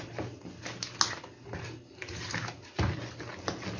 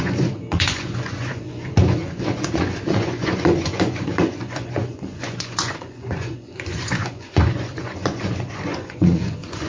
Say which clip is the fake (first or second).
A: second